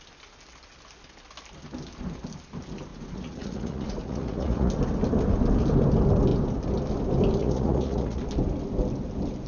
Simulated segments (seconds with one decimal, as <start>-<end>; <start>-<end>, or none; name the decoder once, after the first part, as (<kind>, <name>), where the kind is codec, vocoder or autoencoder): 2.9-4.7 (vocoder, Vocos); 7.4-8.2